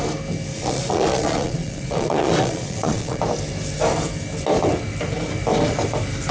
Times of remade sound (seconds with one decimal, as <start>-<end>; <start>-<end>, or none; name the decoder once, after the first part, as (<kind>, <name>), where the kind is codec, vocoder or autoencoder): 0.5-3.2 (vocoder, Vocos)